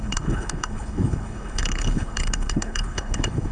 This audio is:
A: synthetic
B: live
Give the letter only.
A